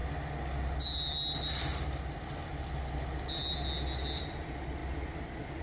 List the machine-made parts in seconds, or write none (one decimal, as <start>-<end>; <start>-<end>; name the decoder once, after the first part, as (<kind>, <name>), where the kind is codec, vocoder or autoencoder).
none